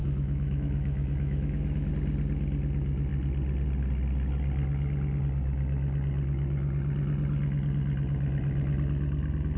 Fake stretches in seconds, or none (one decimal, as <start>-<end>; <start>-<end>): 0.0-1.9